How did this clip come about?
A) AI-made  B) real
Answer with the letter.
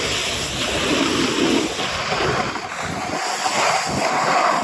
B